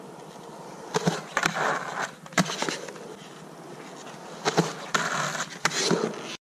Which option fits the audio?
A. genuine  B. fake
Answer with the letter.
A